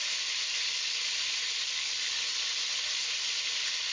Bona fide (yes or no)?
yes